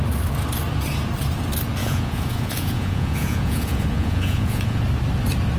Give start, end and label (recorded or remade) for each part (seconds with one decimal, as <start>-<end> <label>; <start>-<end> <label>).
0.0-1.8 recorded; 1.8-4.8 remade; 4.8-5.6 recorded